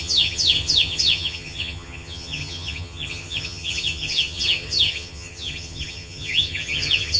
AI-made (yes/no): yes